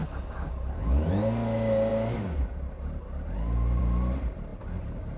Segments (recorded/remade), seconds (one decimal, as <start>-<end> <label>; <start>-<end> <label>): 0.0-5.2 recorded